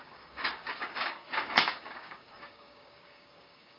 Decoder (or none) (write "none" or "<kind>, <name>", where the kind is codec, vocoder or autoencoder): codec, DAC